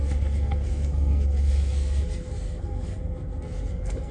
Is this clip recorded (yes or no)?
no